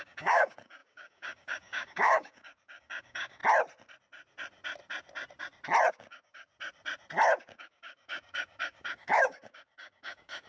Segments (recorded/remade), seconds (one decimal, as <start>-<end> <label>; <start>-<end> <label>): 0.0-3.4 remade; 3.4-5.9 recorded; 5.9-6.5 remade; 6.5-7.4 recorded; 7.4-10.5 remade